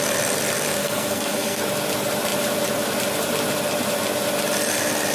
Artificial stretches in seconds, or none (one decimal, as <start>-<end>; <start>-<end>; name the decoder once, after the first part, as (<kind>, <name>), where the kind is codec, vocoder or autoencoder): 0.8-1.6 (codec, SNAC)